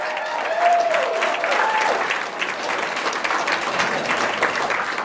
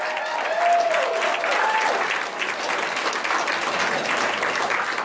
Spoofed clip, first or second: first